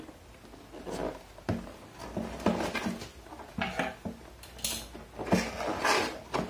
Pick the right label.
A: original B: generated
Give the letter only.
A